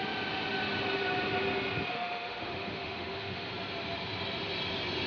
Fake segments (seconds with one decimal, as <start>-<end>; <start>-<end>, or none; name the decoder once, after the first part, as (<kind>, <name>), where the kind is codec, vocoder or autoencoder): 1.9-3.5 (autoencoder, DAC-VAE)